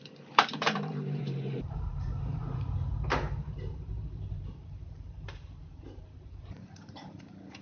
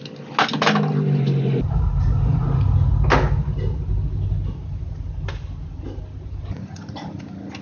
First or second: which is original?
second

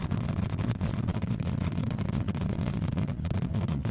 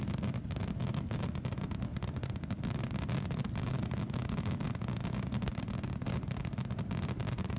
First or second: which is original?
second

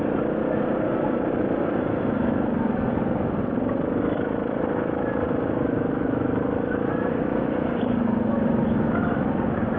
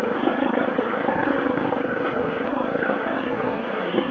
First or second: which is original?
first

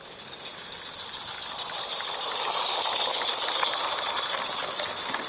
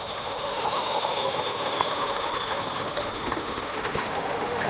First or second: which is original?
first